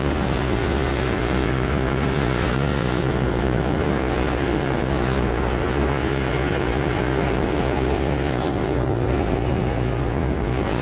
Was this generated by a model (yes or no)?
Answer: yes